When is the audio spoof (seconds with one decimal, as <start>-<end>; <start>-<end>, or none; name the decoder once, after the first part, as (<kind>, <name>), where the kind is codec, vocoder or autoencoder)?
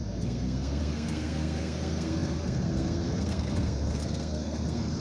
0.0-5.0 (codec, SNAC)